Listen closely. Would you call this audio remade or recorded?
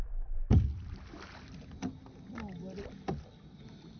recorded